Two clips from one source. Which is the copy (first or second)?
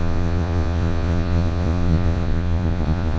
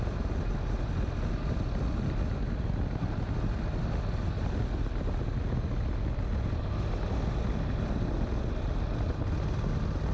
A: first